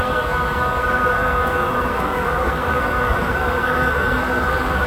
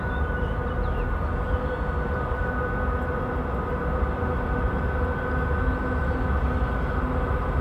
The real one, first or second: second